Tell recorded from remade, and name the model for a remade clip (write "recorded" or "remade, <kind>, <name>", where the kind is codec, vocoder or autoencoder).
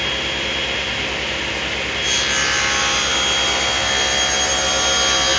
recorded